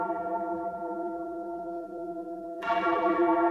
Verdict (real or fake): fake